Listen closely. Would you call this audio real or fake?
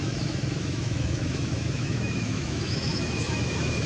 fake